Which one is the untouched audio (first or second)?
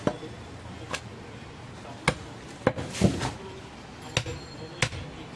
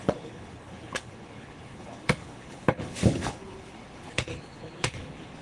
first